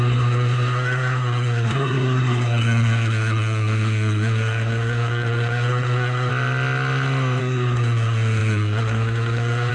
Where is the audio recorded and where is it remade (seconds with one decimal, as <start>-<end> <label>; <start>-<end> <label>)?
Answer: 0.0-6.3 remade; 6.3-7.4 recorded; 7.4-9.7 remade